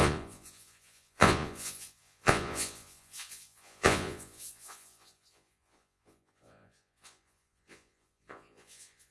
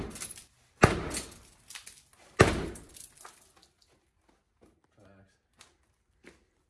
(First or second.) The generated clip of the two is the first